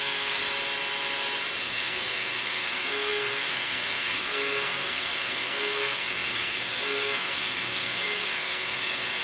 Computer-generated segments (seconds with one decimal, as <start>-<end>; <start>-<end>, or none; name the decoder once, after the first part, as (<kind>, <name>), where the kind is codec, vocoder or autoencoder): 0.0-0.4 (codec, SNAC); 1.6-9.2